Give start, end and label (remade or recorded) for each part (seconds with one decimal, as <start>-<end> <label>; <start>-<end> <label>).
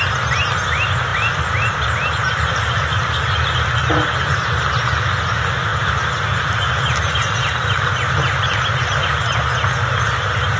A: 0.0-10.6 recorded